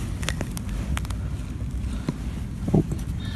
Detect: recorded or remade recorded